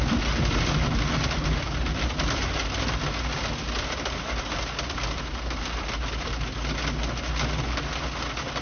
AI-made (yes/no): no